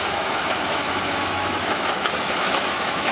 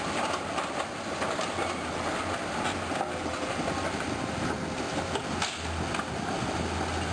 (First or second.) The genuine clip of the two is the second